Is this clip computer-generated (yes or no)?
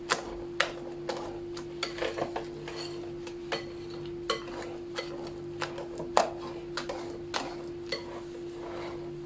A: no